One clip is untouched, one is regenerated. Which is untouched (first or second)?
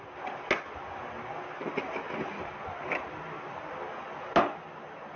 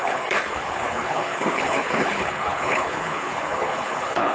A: first